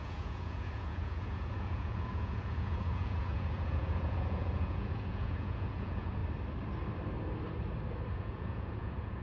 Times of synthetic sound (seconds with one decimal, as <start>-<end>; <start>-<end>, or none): 0.0-6.2; 8.1-9.2